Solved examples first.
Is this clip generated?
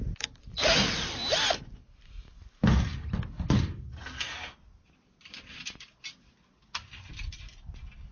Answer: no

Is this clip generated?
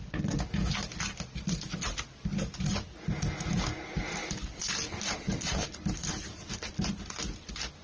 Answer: no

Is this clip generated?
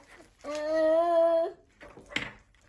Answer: no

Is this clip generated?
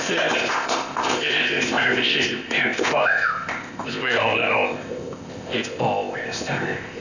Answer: yes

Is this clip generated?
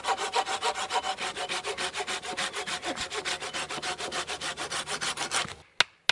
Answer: no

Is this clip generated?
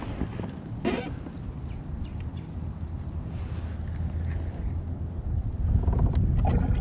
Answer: no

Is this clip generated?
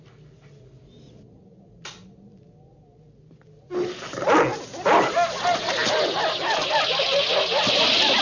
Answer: no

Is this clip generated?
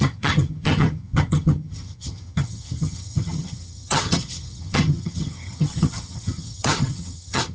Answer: yes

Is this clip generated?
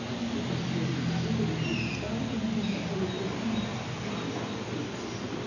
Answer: no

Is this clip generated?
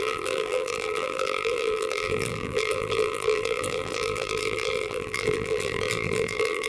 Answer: yes